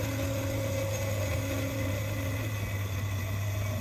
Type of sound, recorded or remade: recorded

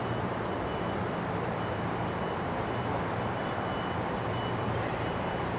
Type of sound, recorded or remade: remade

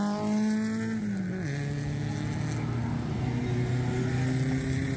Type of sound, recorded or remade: recorded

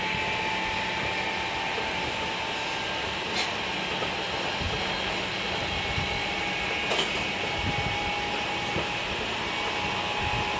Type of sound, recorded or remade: recorded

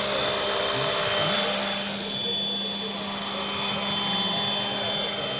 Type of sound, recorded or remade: recorded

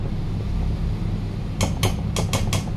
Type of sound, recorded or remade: recorded